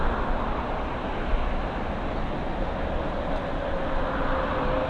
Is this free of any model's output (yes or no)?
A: yes